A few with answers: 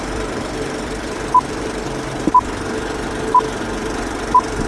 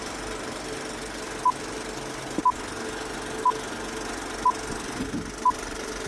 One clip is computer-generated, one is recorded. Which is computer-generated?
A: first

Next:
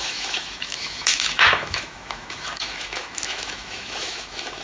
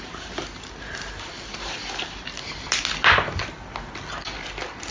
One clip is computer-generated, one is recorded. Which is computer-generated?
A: first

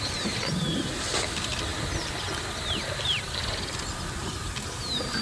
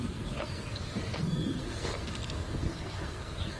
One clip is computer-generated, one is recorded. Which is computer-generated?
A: second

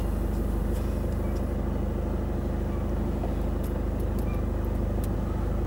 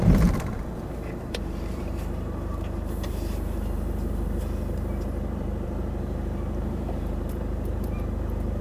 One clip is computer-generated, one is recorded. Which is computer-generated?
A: second